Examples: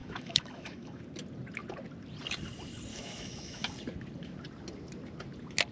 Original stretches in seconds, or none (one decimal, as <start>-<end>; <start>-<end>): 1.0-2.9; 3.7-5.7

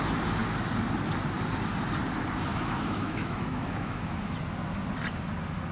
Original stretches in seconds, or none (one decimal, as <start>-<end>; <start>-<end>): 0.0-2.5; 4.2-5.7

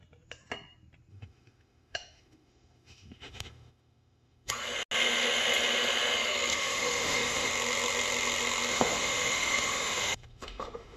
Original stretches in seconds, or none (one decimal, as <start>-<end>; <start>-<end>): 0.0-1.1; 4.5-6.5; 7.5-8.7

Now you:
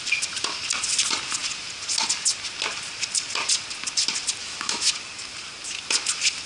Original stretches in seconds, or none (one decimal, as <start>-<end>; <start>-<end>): 0.0-4.4; 4.9-6.5

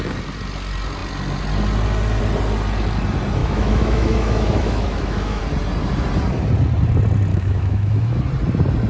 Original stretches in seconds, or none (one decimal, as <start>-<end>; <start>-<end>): 0.0-3.4; 5.4-7.3; 8.2-8.9

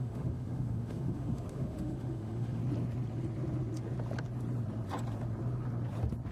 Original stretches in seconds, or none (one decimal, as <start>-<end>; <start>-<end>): 2.6-6.3